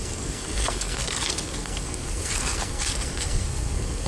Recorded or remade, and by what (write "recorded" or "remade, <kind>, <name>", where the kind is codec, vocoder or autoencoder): remade, codec, SNAC